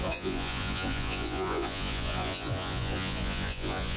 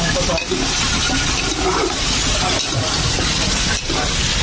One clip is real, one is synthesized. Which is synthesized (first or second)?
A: first